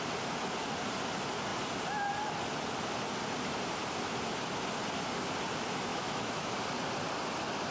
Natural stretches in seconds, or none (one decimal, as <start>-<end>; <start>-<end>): 0.0-5.9; 6.5-7.7